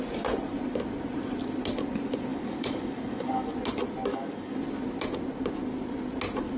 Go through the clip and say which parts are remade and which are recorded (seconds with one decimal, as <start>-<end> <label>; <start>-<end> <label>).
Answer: 0.0-2.3 recorded; 2.3-3.5 remade; 3.5-4.1 recorded; 4.1-4.6 remade; 4.6-6.6 recorded